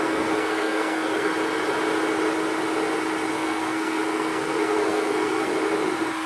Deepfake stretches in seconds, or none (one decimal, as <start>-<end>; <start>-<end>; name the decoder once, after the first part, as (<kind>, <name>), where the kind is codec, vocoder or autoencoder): 0.0-1.3 (codec, SNAC); 3.3-5.5